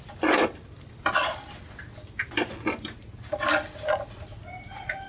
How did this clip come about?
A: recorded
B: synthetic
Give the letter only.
A